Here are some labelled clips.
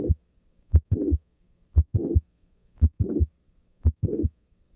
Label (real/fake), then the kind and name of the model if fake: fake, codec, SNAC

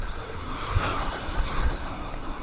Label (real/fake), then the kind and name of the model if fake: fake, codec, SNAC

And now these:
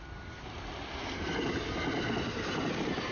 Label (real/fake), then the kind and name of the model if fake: real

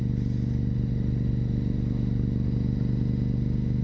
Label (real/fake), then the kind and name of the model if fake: real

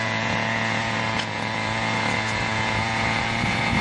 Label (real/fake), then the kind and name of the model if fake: fake, vocoder, Vocos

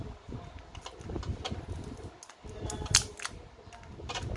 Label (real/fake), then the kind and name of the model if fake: real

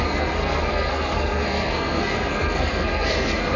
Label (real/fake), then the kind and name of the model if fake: fake, codec, SNAC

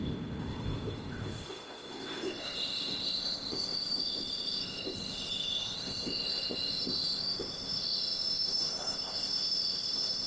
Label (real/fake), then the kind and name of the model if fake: fake, codec, ZipCodec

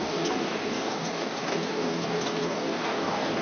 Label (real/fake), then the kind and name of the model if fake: fake, codec, DAC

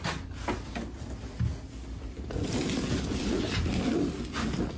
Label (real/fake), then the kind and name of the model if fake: real